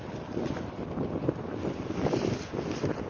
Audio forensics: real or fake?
real